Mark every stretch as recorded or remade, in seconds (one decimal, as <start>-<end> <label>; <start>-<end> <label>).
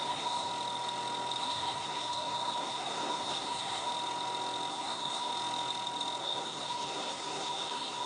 0.0-0.5 remade; 0.5-1.4 recorded; 1.4-3.9 remade; 3.9-4.7 recorded; 4.7-5.3 remade; 5.3-6.2 recorded; 6.2-8.1 remade